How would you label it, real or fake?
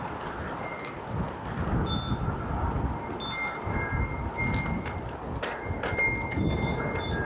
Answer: real